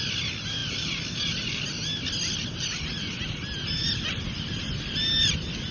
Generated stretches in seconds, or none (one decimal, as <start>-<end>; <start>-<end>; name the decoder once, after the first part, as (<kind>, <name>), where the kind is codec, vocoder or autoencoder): none